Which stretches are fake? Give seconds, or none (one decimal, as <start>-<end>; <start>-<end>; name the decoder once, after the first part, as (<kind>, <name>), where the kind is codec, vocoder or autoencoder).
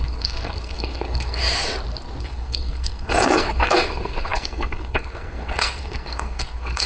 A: 0.0-1.4 (codec, SNAC); 2.2-6.9